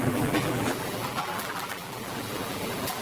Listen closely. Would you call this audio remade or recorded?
remade